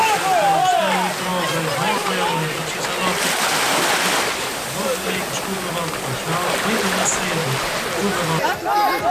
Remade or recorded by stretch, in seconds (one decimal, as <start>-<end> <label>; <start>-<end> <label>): 0.0-9.1 recorded